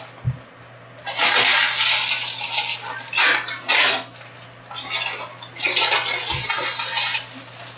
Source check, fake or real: real